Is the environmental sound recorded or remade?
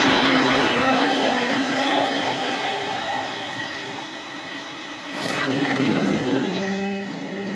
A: remade